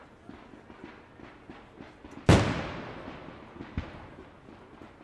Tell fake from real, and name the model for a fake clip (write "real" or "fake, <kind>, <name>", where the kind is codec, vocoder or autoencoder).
real